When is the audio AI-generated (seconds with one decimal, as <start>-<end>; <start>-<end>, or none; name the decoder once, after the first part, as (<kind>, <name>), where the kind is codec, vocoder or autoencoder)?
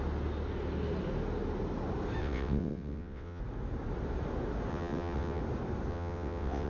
2.2-3.4 (vocoder, WaveNeXt); 4.7-5.4; 5.9-6.7